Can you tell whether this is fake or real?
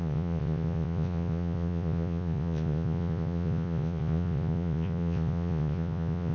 fake